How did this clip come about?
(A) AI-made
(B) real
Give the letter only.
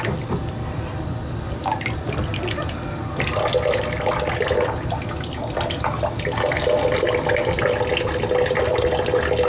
B